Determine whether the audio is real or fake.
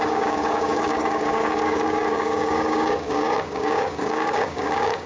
fake